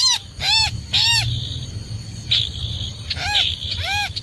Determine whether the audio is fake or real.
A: real